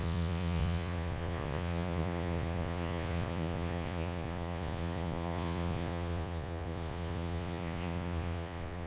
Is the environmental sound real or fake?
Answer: fake